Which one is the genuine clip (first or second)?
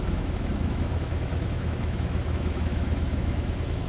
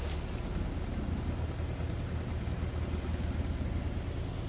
second